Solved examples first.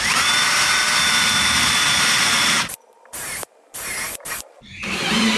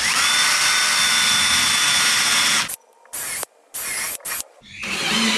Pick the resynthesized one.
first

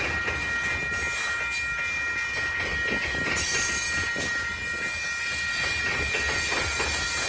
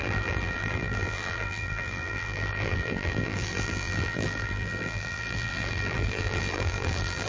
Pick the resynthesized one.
second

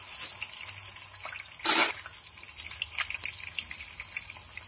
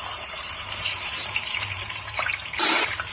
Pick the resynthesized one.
second